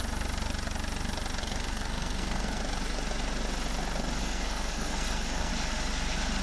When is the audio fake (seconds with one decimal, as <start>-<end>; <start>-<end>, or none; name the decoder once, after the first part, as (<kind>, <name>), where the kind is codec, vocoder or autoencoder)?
1.4-2.6 (codec, SNAC); 4.2-5.5